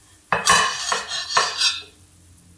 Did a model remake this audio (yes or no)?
no